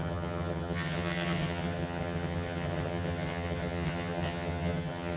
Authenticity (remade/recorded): remade